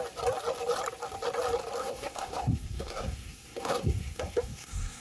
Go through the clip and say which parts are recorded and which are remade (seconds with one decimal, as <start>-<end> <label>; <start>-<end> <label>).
0.0-1.8 recorded; 1.8-5.0 remade